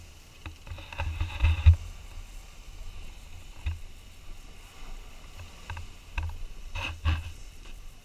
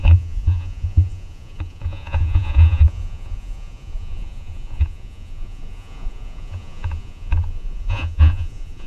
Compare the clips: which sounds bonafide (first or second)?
first